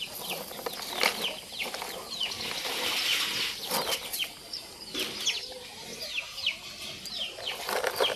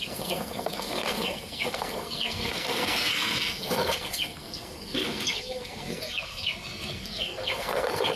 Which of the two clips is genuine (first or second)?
first